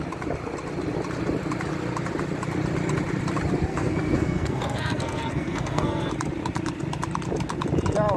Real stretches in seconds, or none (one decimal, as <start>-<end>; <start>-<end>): 0.0-3.7; 6.1-8.2